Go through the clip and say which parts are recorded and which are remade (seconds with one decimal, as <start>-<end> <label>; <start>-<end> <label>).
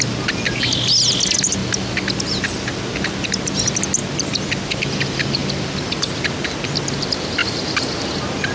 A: 0.0-4.0 recorded; 4.0-4.8 remade; 4.8-7.4 recorded; 7.4-7.9 remade; 7.9-8.5 recorded